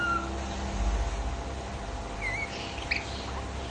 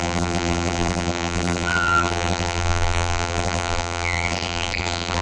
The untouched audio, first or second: first